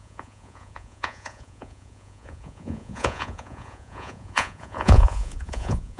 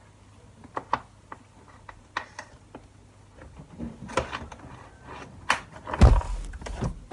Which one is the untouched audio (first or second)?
second